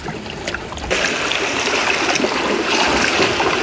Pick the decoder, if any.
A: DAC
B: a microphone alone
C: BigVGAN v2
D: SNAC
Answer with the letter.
B